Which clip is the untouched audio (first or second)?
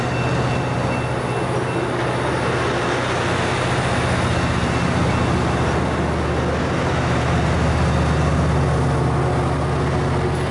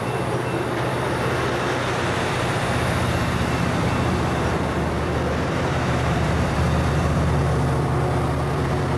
first